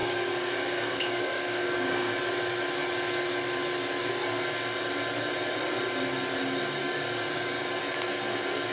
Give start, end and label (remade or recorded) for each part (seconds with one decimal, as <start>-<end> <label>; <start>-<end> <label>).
0.0-2.2 remade; 2.2-6.8 recorded; 6.8-7.8 remade; 7.8-8.7 recorded

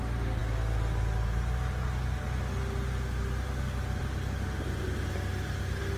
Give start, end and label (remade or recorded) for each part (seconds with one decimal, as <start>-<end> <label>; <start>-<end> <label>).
0.0-6.0 recorded

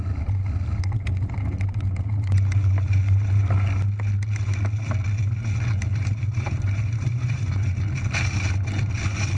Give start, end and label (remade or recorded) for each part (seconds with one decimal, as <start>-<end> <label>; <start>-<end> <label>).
0.0-5.9 recorded; 5.9-7.8 remade; 7.8-9.4 recorded

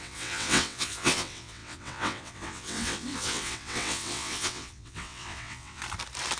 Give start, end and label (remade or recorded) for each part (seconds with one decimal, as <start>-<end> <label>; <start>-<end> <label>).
0.0-5.8 remade; 5.8-6.4 recorded

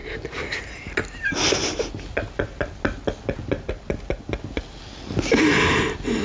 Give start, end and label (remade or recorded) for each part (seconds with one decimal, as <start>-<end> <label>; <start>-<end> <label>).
0.0-6.2 recorded

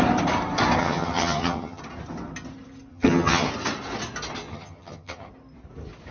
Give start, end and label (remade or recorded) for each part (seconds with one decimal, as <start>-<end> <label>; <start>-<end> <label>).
0.0-0.8 recorded; 0.8-1.8 remade; 1.8-2.9 recorded; 2.9-3.5 remade; 3.5-4.5 recorded; 4.5-5.3 remade; 5.3-6.1 recorded

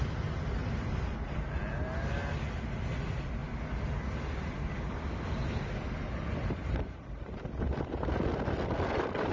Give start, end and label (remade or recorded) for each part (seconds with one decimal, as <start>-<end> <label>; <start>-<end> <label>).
0.0-9.3 recorded